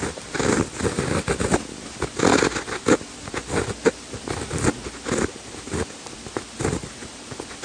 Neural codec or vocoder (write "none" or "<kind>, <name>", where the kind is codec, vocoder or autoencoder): none